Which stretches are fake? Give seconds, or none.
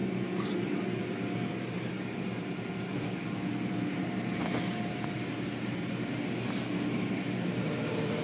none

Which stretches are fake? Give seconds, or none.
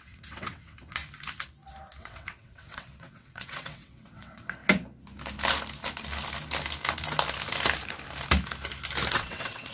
0.0-1.0; 2.0-4.6; 9.1-9.7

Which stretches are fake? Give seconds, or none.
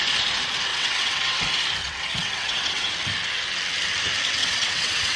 0.7-1.4; 1.8-2.9; 4.4-5.2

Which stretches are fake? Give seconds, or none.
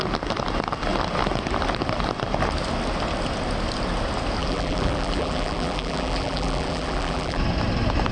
4.4-7.4